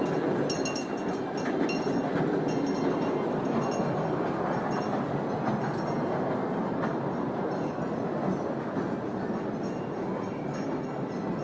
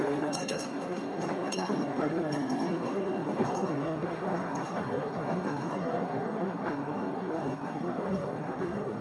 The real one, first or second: first